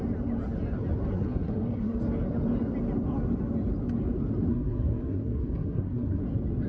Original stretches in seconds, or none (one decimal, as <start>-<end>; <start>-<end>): 0.0-1.1; 2.0-4.5; 6.2-6.7